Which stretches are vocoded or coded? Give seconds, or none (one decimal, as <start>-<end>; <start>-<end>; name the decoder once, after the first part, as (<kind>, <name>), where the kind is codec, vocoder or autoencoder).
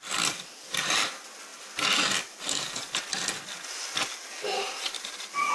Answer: none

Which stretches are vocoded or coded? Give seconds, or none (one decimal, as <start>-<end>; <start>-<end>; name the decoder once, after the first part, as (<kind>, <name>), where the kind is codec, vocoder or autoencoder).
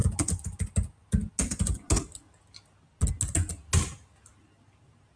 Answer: none